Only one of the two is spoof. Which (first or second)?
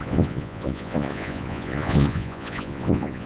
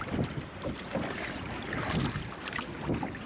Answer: first